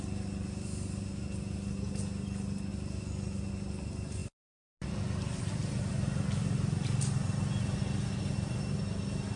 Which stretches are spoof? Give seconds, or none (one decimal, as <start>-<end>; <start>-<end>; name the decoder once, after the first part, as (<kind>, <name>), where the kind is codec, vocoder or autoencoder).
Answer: none